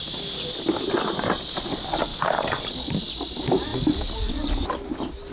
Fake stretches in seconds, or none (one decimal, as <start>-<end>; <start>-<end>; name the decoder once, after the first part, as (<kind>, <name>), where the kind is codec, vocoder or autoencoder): none